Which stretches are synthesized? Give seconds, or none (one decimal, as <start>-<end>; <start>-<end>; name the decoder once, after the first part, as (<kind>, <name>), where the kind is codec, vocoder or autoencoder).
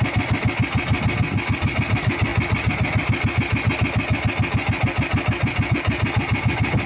none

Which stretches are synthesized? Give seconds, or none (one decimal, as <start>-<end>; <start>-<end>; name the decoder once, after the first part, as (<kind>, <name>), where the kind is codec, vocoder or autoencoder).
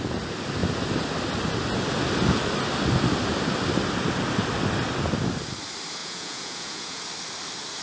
6.0-7.0 (vocoder, Vocos)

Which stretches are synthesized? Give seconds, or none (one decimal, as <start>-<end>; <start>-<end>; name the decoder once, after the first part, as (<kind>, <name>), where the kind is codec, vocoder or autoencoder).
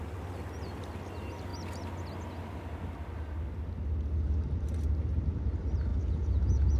5.9-6.8 (vocoder, Vocos)